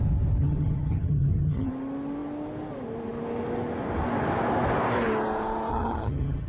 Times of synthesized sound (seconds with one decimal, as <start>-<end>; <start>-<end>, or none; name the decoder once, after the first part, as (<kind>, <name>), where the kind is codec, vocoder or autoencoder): 0.4-1.7 (vocoder, HiFi-GAN); 5.7-6.5